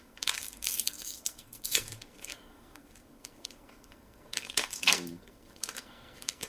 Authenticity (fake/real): fake